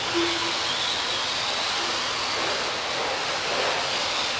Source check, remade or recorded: recorded